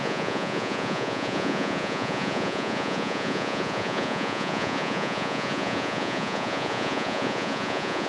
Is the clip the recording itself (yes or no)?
no